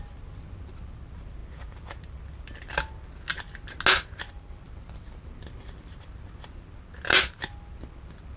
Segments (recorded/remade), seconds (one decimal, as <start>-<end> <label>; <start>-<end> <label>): 0.0-8.4 recorded